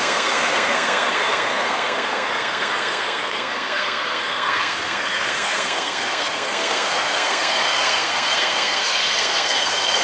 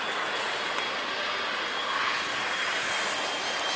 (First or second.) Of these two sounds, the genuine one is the second